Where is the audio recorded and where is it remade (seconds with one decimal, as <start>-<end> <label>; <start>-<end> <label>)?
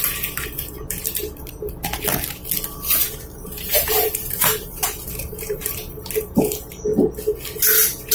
0.0-2.4 remade; 2.4-3.1 recorded; 3.1-6.9 remade; 6.9-8.1 recorded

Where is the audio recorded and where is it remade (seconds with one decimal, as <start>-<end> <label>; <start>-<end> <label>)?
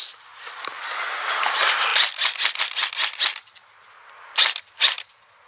0.0-5.5 recorded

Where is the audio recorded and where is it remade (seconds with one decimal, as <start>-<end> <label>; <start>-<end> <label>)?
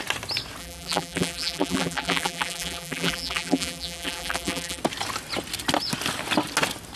0.0-0.6 recorded; 0.6-4.8 remade; 4.8-7.0 recorded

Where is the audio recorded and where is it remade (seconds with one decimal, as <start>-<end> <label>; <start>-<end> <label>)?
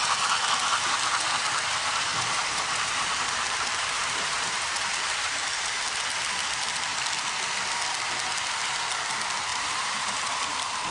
0.0-2.1 recorded; 2.1-5.8 remade; 5.8-9.5 recorded; 9.5-10.3 remade; 10.3-10.9 recorded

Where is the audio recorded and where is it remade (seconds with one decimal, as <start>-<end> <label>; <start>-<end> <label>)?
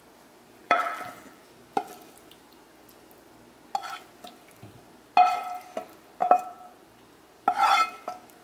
0.0-0.6 recorded; 0.6-1.4 remade; 1.4-6.2 recorded; 6.2-6.9 remade; 6.9-8.4 recorded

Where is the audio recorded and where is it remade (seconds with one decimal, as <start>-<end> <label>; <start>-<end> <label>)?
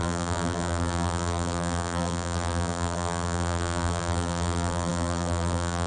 0.0-5.9 remade